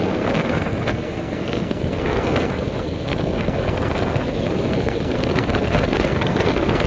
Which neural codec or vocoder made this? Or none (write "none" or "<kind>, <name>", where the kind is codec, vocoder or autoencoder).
codec, SNAC